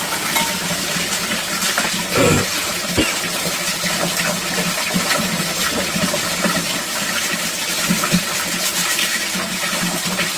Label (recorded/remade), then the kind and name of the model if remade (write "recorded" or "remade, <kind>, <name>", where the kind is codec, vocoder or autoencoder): recorded